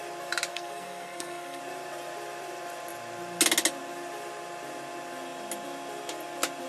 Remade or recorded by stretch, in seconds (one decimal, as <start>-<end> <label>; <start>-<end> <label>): 0.0-0.5 recorded; 0.5-1.6 remade; 1.6-6.7 recorded